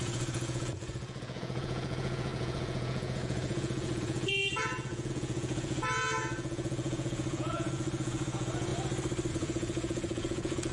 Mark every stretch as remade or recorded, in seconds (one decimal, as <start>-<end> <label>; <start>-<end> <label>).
0.0-8.7 remade; 8.7-9.3 recorded; 9.3-10.7 remade